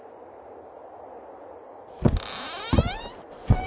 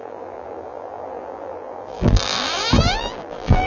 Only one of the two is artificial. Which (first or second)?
second